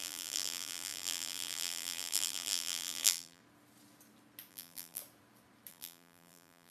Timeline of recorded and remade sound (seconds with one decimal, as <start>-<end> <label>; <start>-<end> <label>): 0.0-3.4 remade; 3.4-4.5 recorded; 4.5-5.0 remade; 5.0-5.7 recorded; 5.7-6.7 remade